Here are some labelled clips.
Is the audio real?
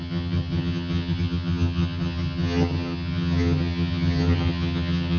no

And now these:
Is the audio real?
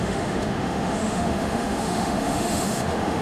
no